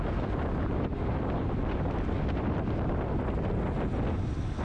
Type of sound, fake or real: real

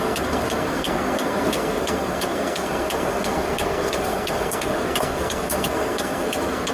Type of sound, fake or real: fake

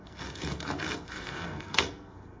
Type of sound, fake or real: fake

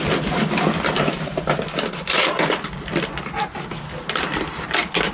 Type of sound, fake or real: real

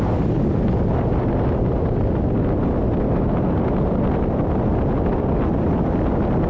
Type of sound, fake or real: real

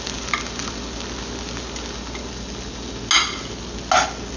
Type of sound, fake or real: real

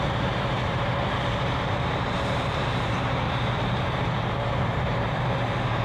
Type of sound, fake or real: fake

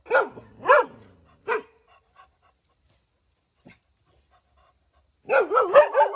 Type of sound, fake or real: real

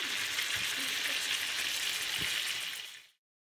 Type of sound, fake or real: real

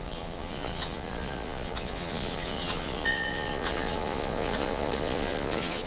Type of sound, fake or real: fake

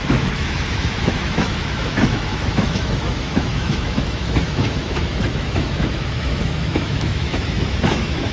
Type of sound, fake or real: fake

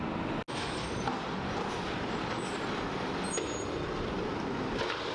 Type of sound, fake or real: real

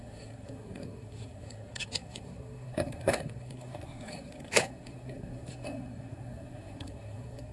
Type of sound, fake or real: fake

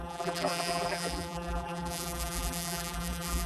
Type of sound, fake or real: fake